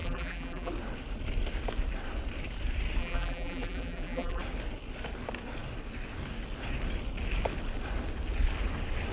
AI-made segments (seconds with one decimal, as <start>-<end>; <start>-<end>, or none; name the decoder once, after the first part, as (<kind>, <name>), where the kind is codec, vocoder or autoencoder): 0.0-0.7 (vocoder, BigVGAN v2); 3.0-4.4